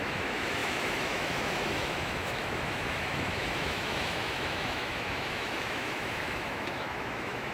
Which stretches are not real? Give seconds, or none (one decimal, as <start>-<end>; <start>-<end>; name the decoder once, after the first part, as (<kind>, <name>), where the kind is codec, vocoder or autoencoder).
0.0-7.5 (autoencoder, DAC-VAE)